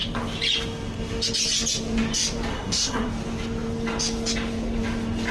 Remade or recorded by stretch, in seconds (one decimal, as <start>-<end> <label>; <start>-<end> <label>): 0.0-2.5 recorded; 2.5-3.1 remade; 3.1-5.3 recorded